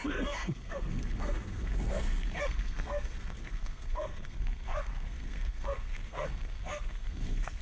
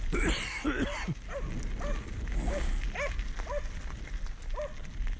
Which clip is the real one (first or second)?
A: second